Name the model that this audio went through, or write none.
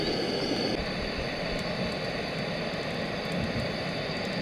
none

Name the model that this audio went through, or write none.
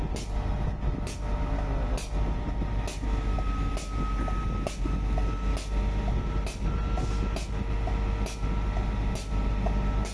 none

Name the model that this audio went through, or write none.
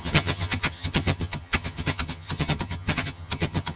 vocoder, HiFi-GAN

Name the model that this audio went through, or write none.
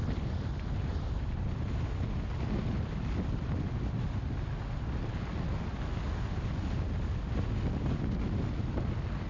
none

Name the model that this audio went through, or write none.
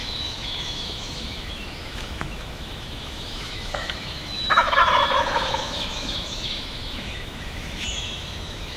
autoencoder, DAC-VAE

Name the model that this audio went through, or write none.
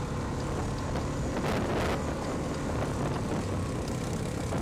none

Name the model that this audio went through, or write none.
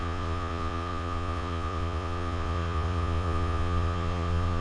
vocoder, Vocos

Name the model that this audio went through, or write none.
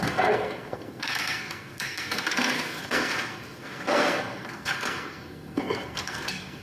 codec, SNAC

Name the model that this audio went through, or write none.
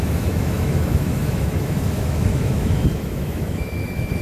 autoencoder, DAC-VAE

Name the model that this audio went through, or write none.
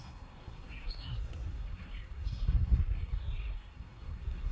codec, SNAC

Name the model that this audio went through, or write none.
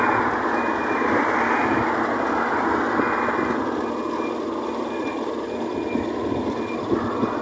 none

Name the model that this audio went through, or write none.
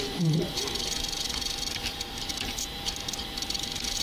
vocoder, BigVGAN v2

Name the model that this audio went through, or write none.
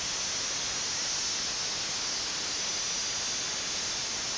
none